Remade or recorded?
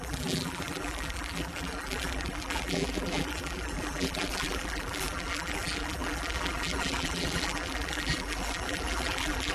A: remade